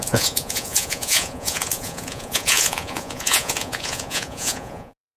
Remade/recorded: remade